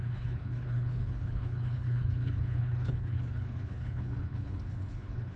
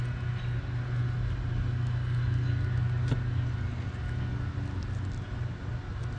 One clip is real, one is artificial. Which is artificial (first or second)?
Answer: first